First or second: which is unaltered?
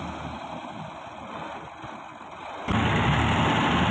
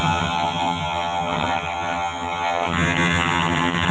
first